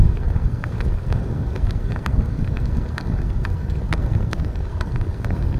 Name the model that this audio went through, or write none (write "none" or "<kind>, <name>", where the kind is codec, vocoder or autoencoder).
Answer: codec, SNAC